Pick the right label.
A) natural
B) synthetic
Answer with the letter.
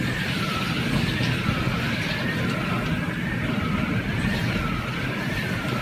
A